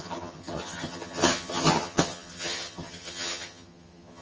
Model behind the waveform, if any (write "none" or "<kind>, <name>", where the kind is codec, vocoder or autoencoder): vocoder, HiFi-GAN